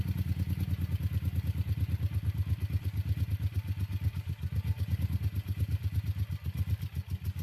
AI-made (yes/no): no